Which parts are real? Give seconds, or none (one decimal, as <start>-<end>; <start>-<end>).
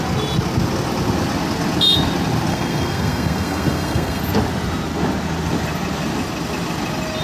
0.0-2.5; 4.2-7.2